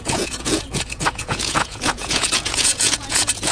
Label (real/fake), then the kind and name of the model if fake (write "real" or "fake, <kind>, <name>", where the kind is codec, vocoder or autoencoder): fake, vocoder, Vocos